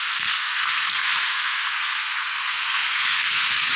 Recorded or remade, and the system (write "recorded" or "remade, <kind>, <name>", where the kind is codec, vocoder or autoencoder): remade, codec, SNAC